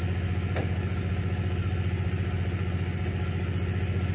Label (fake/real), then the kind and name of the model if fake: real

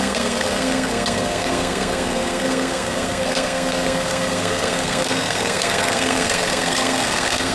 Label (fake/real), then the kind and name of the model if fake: fake, codec, SNAC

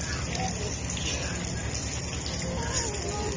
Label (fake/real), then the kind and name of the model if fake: real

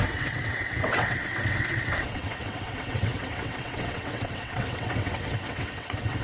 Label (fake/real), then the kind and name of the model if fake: fake, vocoder, WaveNeXt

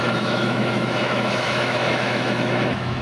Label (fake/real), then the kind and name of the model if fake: fake, autoencoder, DAC-VAE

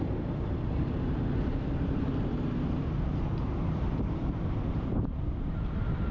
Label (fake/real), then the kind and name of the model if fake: fake, vocoder, BigVGAN v2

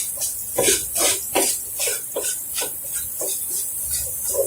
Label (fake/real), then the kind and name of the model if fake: real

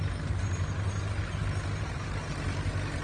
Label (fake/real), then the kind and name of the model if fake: real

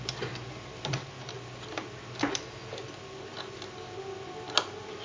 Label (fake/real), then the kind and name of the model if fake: real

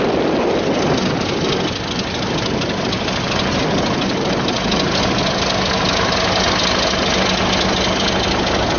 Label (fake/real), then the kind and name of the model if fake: real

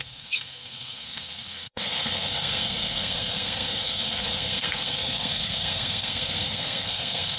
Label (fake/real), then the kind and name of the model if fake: fake, codec, SNAC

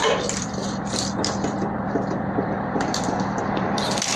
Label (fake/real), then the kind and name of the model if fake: fake, vocoder, BigVGAN v2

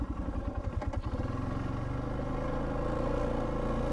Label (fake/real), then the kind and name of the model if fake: real